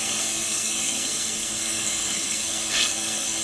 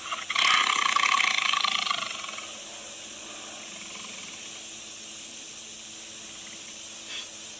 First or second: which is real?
second